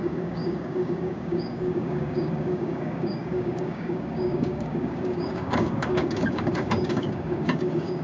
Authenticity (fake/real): fake